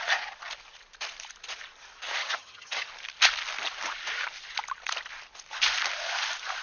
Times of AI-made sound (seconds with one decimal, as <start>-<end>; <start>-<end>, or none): 2.2-2.9